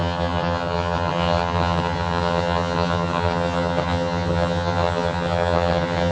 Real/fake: fake